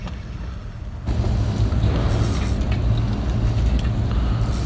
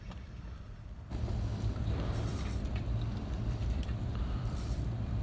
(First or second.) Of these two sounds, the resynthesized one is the second